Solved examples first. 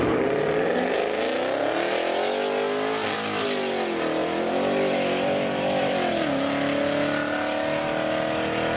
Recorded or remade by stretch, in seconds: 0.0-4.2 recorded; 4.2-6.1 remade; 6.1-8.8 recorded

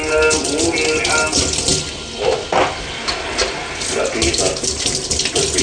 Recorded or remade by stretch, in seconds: 0.0-5.6 recorded

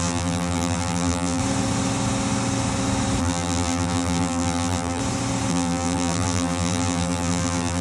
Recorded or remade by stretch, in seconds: 0.0-1.4 remade; 1.4-3.2 recorded; 3.2-5.0 remade; 5.0-5.5 recorded; 5.5-7.8 remade

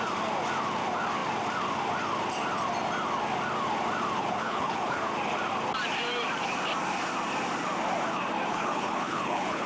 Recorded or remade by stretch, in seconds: 0.0-4.2 recorded; 4.2-5.0 remade; 5.0-8.5 recorded; 8.5-9.7 remade